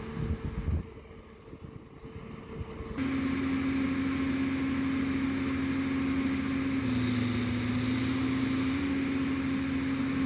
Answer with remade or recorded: recorded